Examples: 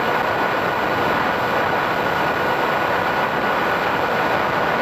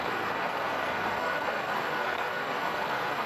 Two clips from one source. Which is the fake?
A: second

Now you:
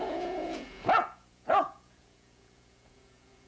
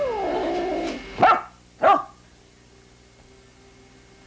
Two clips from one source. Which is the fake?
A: first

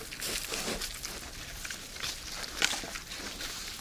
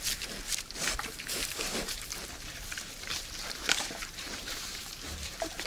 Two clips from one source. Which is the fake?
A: second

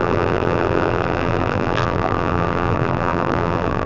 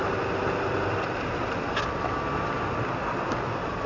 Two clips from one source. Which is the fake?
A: first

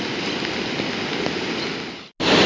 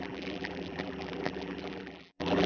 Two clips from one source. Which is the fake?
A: second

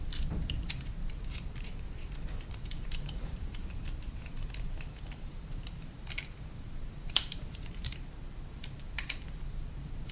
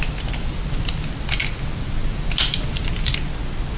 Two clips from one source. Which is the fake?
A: first